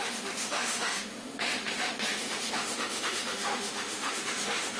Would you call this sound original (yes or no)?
no